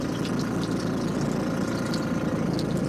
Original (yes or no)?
yes